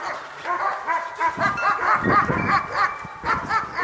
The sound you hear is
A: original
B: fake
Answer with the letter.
A